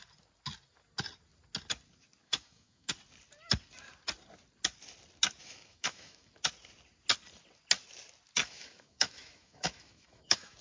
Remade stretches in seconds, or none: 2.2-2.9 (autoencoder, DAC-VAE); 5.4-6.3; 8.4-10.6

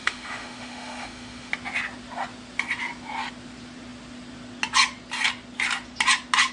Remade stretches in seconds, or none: 0.0-1.5 (autoencoder, DAC-VAE)

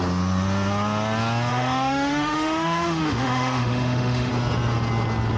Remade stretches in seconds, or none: 1.5-4.3 (autoencoder, DAC-VAE)

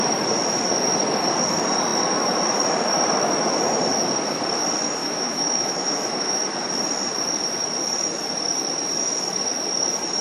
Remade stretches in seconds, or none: 5.0-6.4 (autoencoder, DAC-VAE)

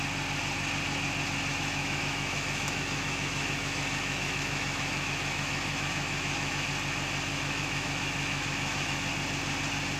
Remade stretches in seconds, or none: 1.5-6.7 (autoencoder, DAC-VAE); 7.3-9.1

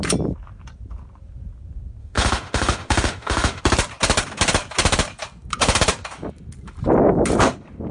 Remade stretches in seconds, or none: 2.0-3.6 (autoencoder, DAC-VAE)

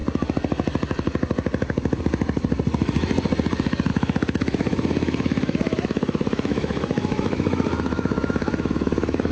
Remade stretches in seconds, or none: 3.9-9.3 (autoencoder, DAC-VAE)